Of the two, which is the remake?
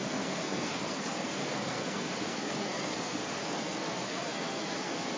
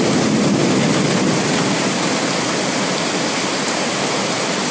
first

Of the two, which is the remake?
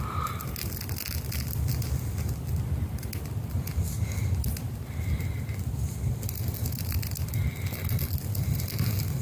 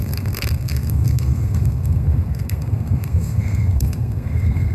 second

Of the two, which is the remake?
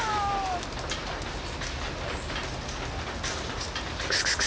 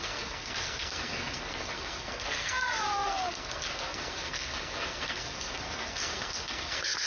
second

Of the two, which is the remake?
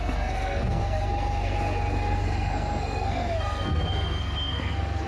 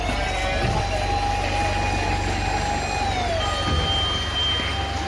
first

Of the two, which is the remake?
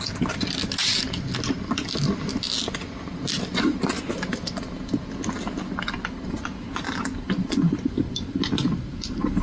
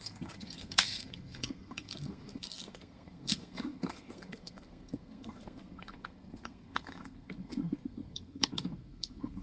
second